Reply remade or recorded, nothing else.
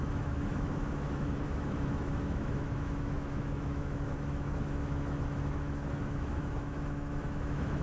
remade